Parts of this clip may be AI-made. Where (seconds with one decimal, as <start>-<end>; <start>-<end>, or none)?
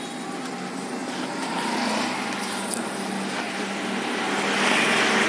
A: none